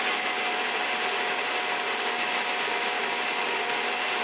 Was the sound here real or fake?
real